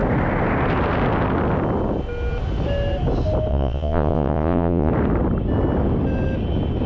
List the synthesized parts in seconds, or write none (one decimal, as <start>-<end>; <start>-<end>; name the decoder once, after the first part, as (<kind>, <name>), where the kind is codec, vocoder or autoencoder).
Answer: 3.5-4.9 (vocoder, Vocos)